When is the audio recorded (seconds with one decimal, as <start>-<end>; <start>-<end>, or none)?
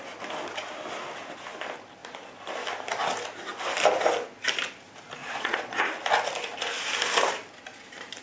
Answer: 0.0-5.2; 5.8-8.2